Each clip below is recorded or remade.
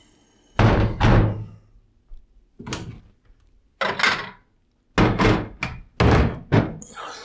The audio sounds recorded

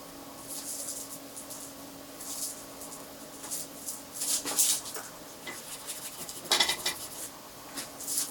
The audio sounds recorded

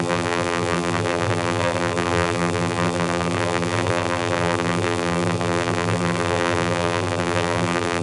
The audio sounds remade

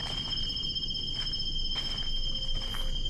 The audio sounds recorded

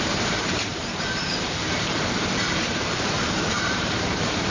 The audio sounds remade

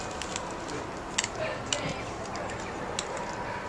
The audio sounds recorded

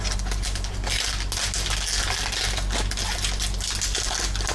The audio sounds recorded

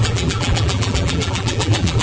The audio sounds remade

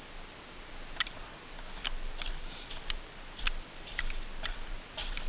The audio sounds recorded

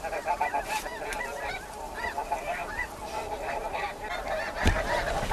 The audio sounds remade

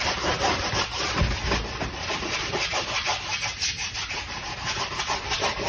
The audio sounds recorded